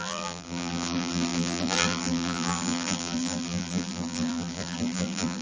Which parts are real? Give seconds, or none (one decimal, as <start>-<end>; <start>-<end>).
none